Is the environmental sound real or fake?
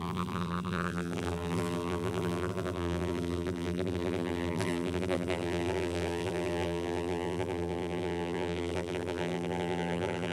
fake